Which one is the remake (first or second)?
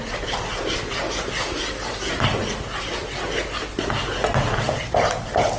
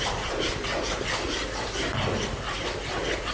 second